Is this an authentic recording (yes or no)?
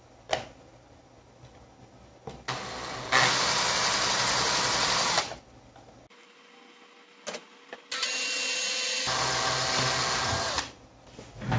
yes